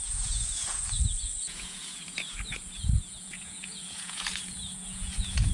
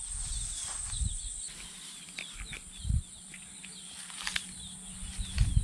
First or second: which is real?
second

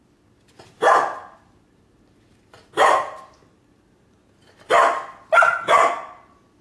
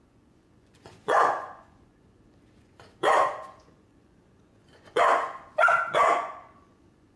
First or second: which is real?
first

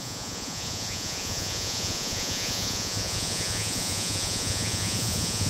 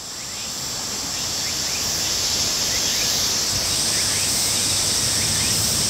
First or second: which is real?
second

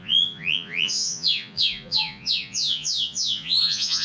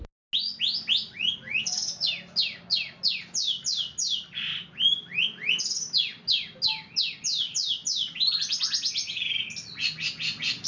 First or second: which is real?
second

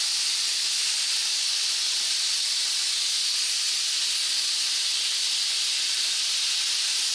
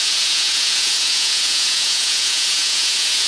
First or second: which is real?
first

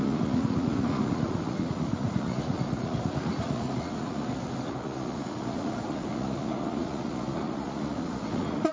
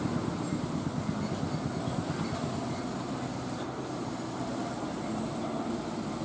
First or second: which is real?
second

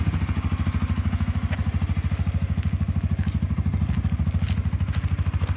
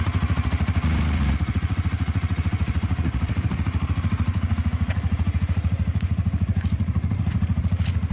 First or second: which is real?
first